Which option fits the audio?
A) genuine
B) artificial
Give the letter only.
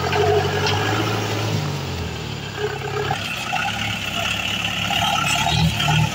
A